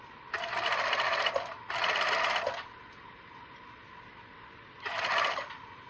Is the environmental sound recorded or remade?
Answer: recorded